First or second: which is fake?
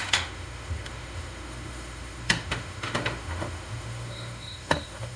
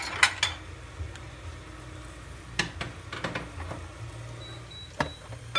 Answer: first